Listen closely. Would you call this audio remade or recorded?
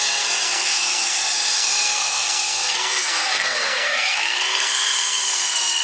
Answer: remade